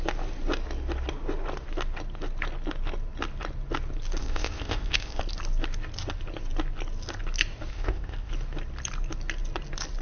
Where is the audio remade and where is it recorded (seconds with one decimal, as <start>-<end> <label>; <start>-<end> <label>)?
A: 0.0-4.2 recorded; 4.2-5.2 remade; 5.2-7.7 recorded; 7.7-8.3 remade; 8.3-10.0 recorded